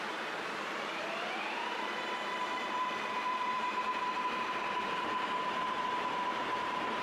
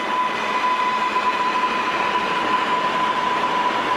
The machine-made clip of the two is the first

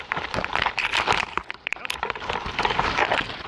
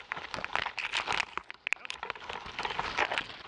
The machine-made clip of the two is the first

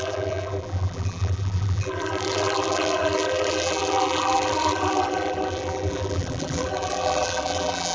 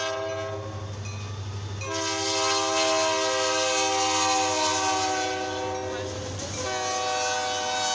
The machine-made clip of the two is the first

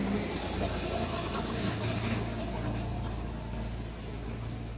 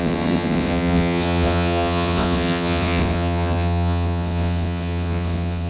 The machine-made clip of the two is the second